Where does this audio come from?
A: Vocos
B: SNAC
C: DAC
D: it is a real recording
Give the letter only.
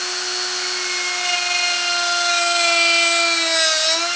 D